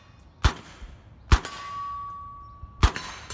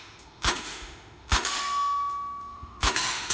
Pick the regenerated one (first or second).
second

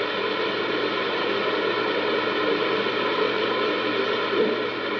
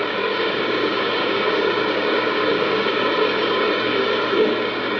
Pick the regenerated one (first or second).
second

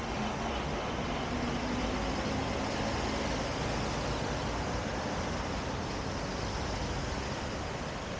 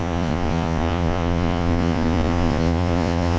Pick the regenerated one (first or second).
second